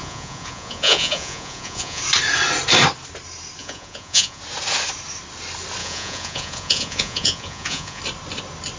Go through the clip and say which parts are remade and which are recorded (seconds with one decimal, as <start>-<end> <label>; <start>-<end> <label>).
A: 0.0-2.0 remade; 2.0-3.6 recorded; 3.6-4.4 remade; 4.4-5.8 recorded; 5.8-8.0 remade; 8.0-8.8 recorded